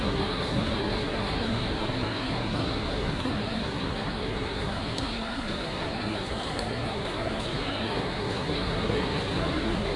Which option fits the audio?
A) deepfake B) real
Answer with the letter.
A